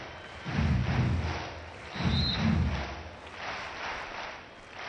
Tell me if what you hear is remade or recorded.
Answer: recorded